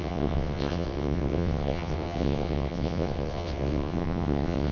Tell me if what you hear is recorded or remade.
remade